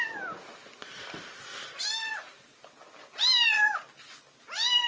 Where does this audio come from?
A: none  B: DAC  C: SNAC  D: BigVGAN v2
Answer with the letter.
A